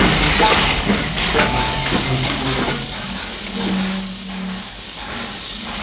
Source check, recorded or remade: remade